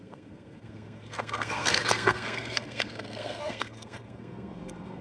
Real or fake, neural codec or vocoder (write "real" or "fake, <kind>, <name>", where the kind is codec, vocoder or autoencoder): fake, codec, SNAC